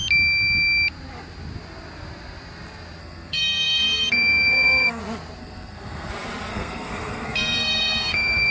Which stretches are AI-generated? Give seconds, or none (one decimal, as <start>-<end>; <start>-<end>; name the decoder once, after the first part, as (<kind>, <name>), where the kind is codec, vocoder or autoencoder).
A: 3.0-5.0 (codec, SNAC); 5.4-6.1; 6.5-8.5